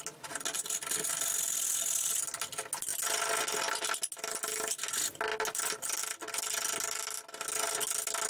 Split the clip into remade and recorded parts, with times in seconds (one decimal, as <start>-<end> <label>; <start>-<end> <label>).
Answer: 0.0-8.3 recorded